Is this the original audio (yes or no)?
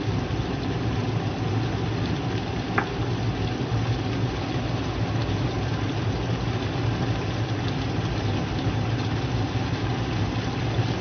yes